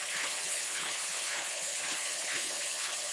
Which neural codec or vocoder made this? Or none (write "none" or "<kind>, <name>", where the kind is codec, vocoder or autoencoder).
codec, HILCodec